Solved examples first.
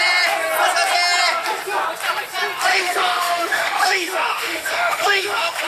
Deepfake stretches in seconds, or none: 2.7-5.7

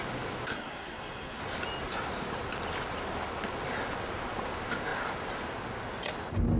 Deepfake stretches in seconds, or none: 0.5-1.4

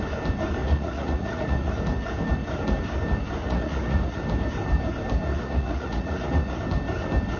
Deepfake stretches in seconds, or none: 0.6-1.7; 3.4-4.2; 5.3-6.6

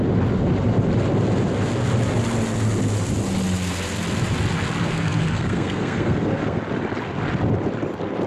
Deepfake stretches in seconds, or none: 4.8-6.6